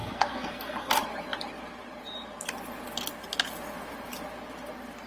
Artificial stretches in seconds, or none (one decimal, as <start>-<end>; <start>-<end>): 0.0-0.9